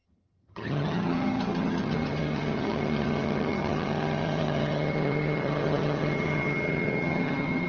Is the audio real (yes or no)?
no